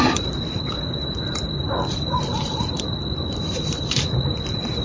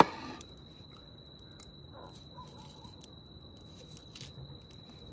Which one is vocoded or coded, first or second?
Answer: first